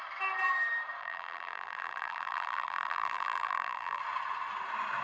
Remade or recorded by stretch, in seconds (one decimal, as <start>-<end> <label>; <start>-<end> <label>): 0.0-1.0 recorded; 1.0-4.0 remade; 4.0-5.0 recorded